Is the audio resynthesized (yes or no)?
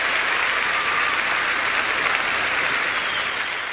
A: yes